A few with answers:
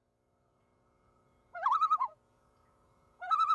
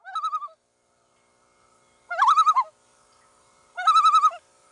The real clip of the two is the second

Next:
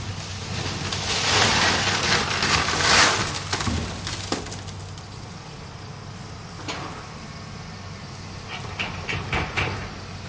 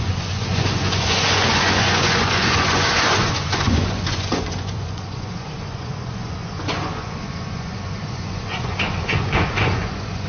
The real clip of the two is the first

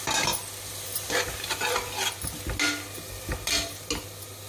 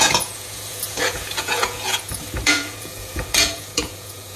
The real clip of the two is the first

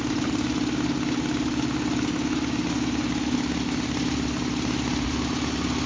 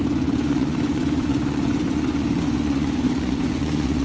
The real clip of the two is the first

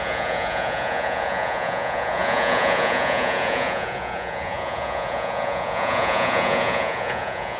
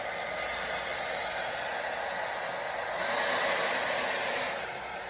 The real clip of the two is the second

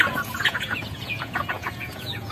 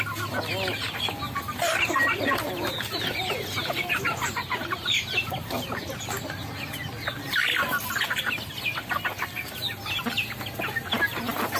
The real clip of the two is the second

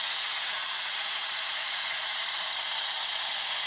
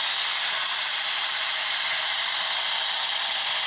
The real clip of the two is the second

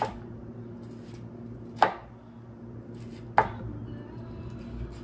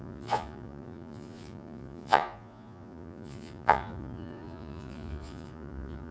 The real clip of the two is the first